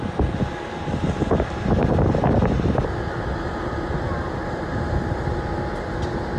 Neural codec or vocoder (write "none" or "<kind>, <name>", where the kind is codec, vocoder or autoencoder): none